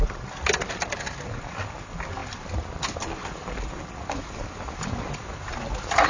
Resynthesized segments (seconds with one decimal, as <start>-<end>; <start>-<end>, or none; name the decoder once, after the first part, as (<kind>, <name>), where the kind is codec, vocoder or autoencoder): none